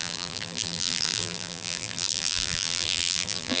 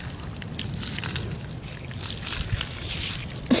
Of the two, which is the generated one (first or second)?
first